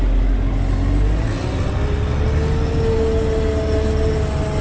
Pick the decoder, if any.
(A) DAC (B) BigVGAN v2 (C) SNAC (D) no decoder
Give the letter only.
D